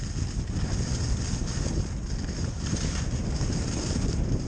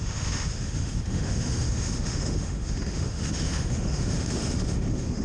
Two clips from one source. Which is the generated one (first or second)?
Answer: second